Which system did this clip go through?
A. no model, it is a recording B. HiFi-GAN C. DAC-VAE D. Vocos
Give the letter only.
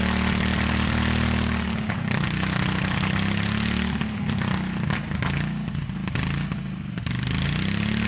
A